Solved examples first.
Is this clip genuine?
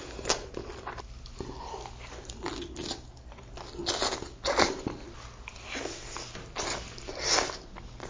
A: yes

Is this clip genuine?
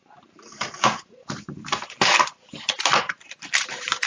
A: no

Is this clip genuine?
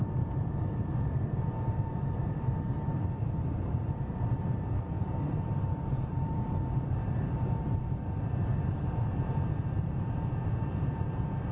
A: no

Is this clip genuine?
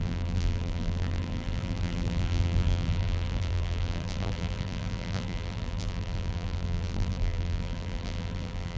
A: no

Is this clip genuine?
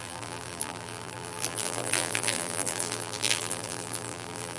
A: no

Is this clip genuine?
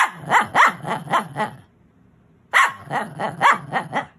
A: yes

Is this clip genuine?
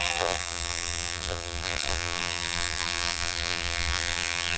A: no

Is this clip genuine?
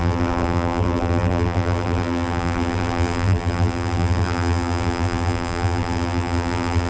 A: no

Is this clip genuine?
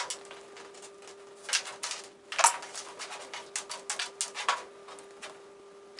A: yes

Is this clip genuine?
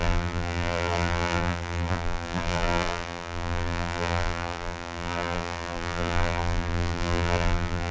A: no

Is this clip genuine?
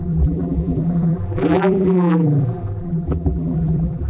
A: no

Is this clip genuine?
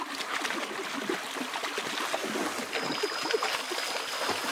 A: yes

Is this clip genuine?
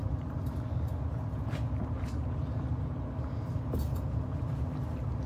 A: no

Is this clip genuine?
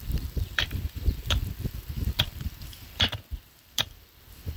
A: no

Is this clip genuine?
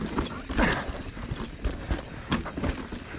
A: yes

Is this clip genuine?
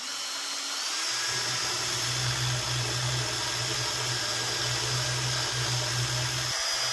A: yes